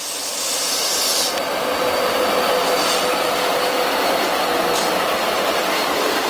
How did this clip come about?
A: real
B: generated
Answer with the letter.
A